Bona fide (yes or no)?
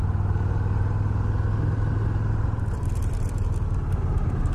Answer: yes